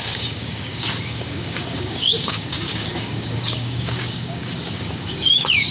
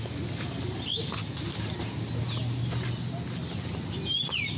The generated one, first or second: first